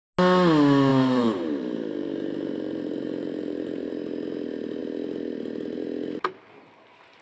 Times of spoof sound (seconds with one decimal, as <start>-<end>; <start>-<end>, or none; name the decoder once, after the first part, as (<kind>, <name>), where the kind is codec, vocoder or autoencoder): 0.9-3.9 (vocoder, BigVGAN v2)